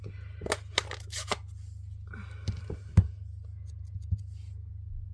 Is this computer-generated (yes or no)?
no